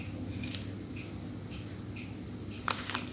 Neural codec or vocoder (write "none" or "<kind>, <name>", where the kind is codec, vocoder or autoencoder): none